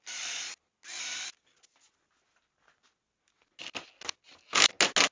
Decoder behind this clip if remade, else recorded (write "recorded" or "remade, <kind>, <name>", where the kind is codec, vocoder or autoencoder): recorded